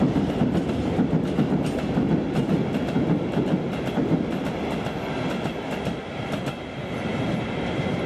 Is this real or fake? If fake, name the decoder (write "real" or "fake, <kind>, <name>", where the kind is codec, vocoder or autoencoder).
real